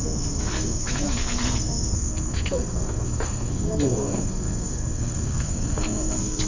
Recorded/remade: remade